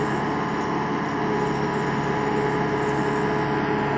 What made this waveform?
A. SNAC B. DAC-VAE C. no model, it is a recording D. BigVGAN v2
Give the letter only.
C